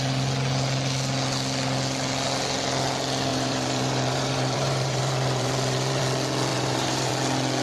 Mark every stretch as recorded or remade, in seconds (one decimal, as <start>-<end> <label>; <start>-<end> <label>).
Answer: 0.0-3.3 recorded; 3.3-6.0 remade; 6.0-6.5 recorded; 6.5-7.1 remade; 7.1-7.6 recorded